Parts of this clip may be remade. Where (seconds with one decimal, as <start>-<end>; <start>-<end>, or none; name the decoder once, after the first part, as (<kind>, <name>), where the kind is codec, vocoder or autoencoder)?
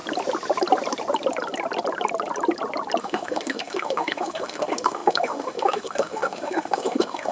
3.0-7.3 (autoencoder, DAC-VAE)